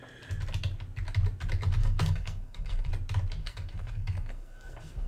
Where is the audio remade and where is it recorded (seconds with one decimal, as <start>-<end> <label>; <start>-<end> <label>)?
0.0-1.8 recorded; 1.8-2.9 remade; 2.9-3.4 recorded; 3.4-5.1 remade